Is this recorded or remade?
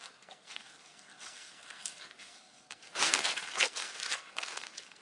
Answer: remade